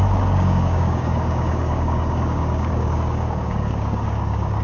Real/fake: fake